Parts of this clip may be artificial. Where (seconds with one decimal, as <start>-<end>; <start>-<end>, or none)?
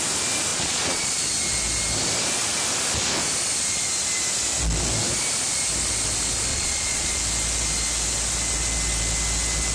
0.5-1.2; 6.5-7.2